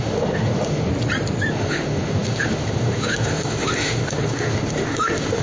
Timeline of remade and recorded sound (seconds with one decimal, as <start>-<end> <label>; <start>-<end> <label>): 0.0-0.9 remade; 0.9-1.5 recorded; 1.5-5.4 remade